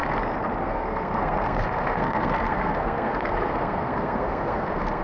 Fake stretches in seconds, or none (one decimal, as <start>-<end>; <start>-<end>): 0.6-5.0